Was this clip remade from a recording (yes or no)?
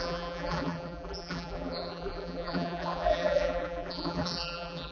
yes